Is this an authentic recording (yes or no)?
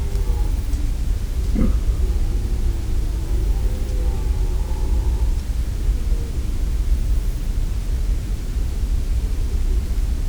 yes